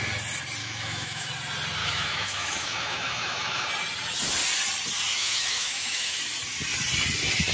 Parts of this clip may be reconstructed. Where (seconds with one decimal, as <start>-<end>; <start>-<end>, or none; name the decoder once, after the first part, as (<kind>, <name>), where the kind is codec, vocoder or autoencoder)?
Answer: 0.6-1.3 (autoencoder, DAC-VAE); 1.8-3.7; 5.1-6.2